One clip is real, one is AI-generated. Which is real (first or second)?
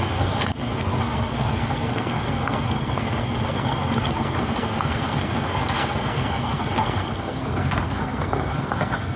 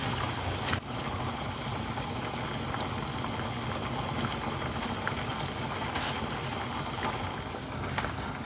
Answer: second